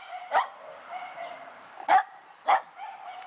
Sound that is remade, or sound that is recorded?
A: remade